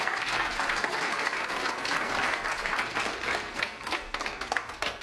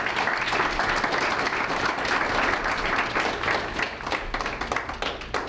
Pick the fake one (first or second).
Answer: first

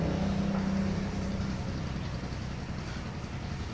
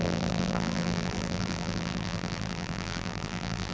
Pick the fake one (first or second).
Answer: second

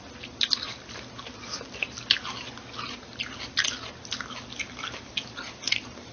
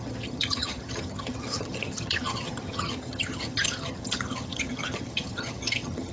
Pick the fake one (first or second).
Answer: second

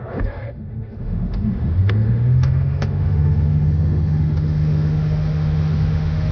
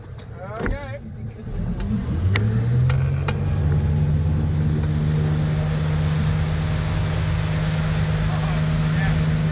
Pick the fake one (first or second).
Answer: first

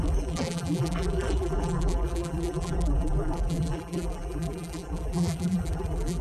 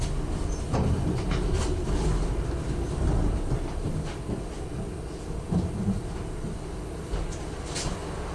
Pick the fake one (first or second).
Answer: first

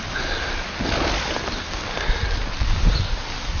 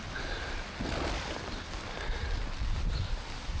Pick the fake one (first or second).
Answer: second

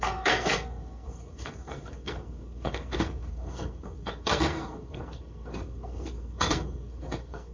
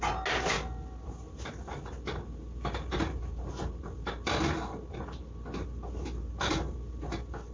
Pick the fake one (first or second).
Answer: first